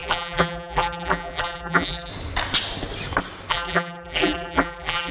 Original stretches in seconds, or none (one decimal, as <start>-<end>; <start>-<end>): 2.1-3.5